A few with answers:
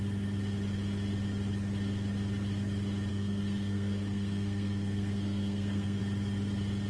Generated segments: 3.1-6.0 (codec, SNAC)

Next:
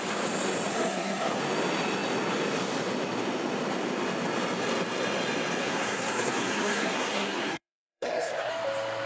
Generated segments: 0.7-1.4 (codec, SNAC); 5.6-8.5

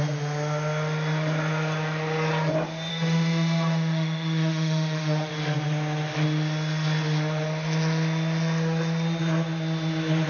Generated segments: 2.9-5.3 (autoencoder, DAC-VAE)

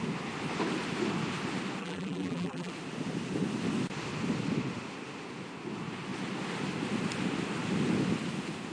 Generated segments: 1.8-2.7 (vocoder, BigVGAN v2)

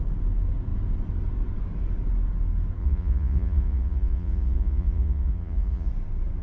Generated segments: 2.8-5.9 (vocoder, Vocos)